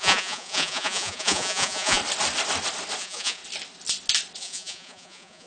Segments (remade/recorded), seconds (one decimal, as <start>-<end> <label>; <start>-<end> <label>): 0.0-2.0 remade; 2.0-3.0 recorded; 3.0-3.4 remade; 3.4-4.4 recorded; 4.4-5.5 remade